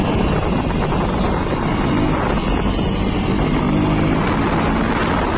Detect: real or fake real